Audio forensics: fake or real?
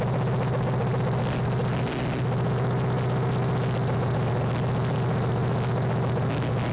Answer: real